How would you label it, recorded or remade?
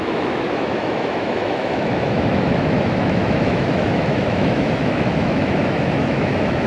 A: remade